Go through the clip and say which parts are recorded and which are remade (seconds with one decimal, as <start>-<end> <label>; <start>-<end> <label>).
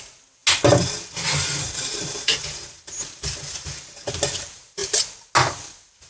0.0-6.1 recorded